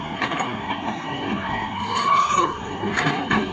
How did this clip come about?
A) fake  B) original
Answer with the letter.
A